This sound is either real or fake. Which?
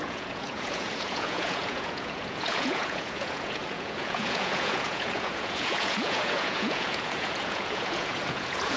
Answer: fake